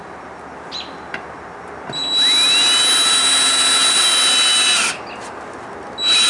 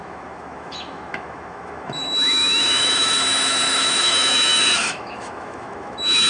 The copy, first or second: second